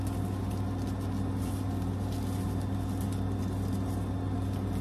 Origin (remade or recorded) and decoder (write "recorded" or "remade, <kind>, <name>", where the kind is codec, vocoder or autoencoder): recorded